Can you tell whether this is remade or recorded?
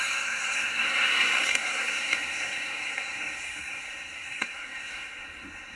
remade